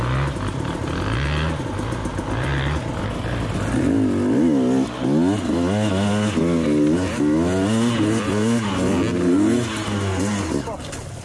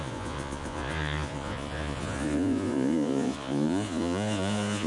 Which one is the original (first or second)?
first